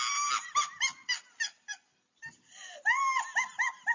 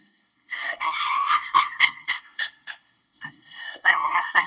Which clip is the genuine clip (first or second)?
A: first